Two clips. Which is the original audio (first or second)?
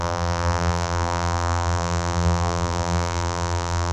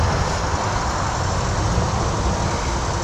second